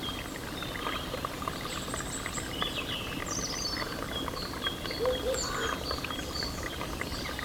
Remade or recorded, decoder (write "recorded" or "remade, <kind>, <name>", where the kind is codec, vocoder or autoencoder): recorded